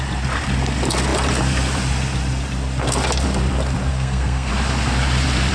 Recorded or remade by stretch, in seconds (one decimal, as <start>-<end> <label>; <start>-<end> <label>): 0.0-3.9 recorded; 3.9-4.5 remade; 4.5-5.5 recorded